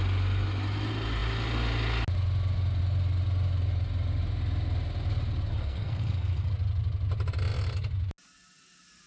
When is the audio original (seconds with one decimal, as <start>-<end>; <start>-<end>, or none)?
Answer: 0.0-5.5; 6.5-9.1